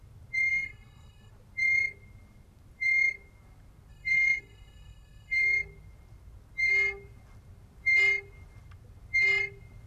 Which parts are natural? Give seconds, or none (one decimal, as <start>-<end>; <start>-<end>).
0.0-0.5; 1.3-3.9; 5.4-9.9